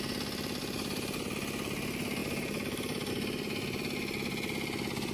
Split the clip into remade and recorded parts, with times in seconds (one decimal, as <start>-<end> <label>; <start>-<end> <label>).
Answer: 0.0-0.6 recorded; 0.6-1.3 remade; 1.3-2.2 recorded; 2.2-3.1 remade; 3.1-5.1 recorded